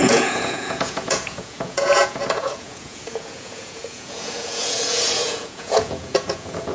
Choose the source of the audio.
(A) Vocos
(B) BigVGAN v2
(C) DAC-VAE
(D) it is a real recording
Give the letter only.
A